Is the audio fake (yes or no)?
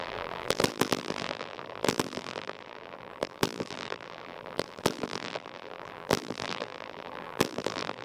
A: yes